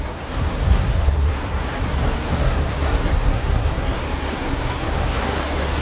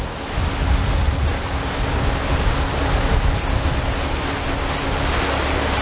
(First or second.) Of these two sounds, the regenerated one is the first